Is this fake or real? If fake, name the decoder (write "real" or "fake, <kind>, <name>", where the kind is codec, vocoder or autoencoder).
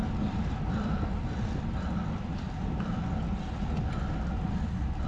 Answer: real